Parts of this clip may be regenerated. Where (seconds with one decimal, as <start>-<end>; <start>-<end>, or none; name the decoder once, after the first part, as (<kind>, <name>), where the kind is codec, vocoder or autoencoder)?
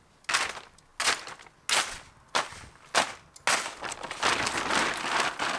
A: none